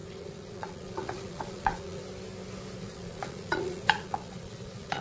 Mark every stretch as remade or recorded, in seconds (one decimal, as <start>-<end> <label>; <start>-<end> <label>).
0.0-2.0 remade; 2.0-2.8 recorded; 2.8-5.0 remade